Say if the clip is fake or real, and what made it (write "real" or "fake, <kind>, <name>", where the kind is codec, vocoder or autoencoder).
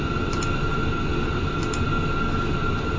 real